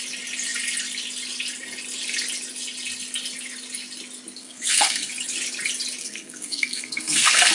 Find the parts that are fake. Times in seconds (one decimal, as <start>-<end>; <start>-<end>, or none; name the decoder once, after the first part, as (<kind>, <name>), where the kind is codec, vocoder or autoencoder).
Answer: 4.4-5.1 (codec, SNAC); 6.0-7.5